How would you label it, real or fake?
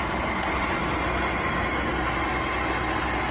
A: real